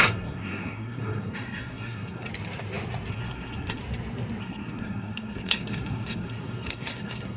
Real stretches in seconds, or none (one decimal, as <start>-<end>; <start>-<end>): 2.3-3.1; 3.8-4.4